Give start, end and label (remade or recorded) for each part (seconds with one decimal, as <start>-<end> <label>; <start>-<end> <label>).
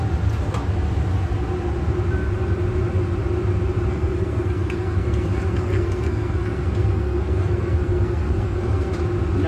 0.0-3.9 recorded; 3.9-8.9 remade; 8.9-9.5 recorded